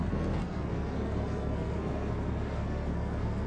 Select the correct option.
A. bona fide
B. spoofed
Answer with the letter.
B